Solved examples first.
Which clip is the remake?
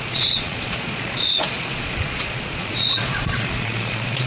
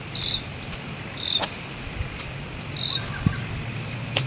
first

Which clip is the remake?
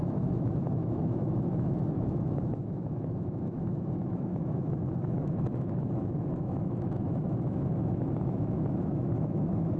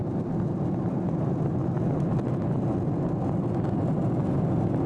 first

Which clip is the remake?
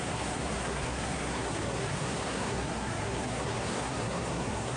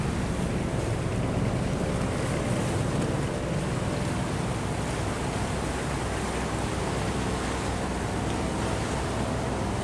first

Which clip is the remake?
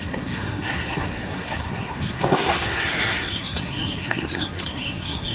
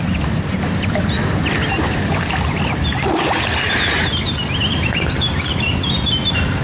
first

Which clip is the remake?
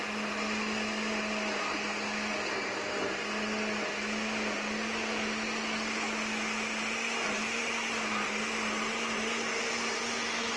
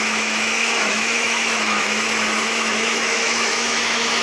second